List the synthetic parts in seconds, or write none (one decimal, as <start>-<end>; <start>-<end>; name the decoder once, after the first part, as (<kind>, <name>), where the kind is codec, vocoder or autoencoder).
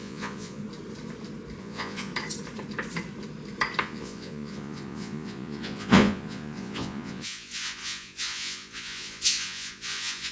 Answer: 0.0-0.6 (vocoder, Vocos); 1.6-2.1; 3.8-10.3